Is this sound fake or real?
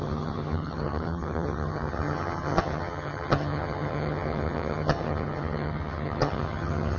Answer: fake